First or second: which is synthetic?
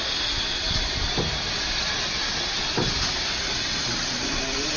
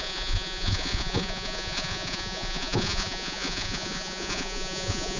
second